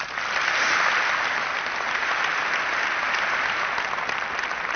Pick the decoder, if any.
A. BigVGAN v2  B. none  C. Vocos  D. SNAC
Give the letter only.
B